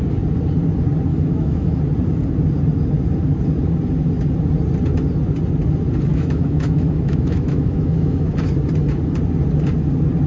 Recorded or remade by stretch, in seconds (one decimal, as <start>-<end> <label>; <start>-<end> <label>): 0.0-1.1 recorded; 1.1-1.8 remade; 1.8-6.1 recorded; 6.1-8.3 remade; 8.3-10.3 recorded